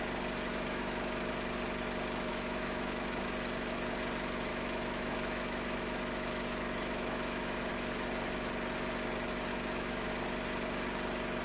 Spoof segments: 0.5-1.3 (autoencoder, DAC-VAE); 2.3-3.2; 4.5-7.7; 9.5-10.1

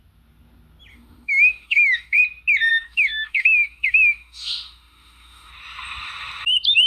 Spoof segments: 0.9-2.2 (autoencoder, DAC-VAE); 2.7-5.5

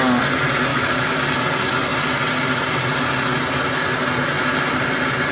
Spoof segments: 0.7-1.2 (autoencoder, DAC-VAE)

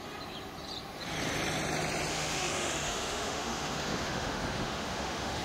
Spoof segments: 2.1-5.4 (autoencoder, DAC-VAE)

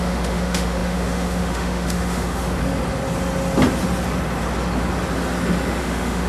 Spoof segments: 0.0-2.6 (autoencoder, DAC-VAE); 5.8-6.3

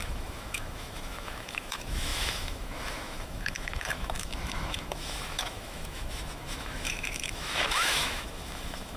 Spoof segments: 0.0-9.0 (autoencoder, DAC-VAE)